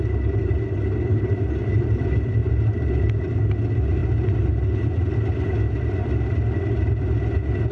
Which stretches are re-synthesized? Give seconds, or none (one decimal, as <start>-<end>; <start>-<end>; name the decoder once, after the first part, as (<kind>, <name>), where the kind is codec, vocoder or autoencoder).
2.4-2.9 (vocoder, BigVGAN v2)